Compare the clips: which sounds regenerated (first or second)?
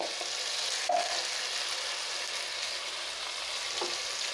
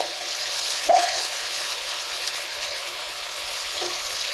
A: second